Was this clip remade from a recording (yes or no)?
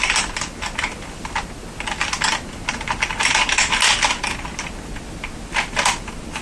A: no